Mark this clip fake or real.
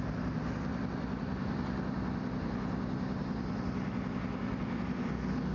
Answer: real